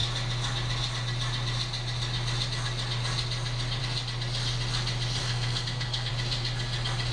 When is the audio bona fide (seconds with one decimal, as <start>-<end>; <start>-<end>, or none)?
0.0-5.2; 6.1-7.1